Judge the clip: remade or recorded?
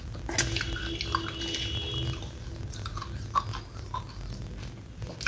recorded